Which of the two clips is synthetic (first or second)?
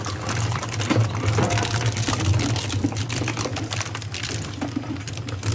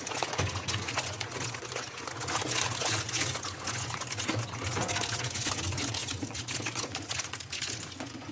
second